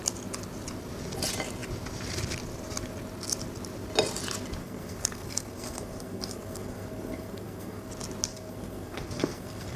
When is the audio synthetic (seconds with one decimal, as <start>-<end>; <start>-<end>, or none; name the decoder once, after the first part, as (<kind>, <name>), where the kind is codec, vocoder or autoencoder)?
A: 4.6-7.9 (codec, SNAC); 8.3-9.8